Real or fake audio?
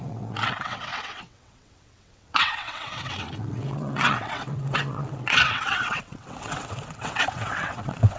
fake